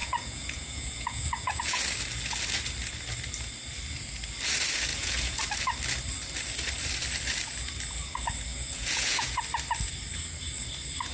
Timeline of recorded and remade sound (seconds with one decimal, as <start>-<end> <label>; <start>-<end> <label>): 0.0-1.8 remade; 1.8-4.9 recorded; 4.9-5.4 remade; 5.4-8.5 recorded; 8.5-9.4 remade; 9.4-11.1 recorded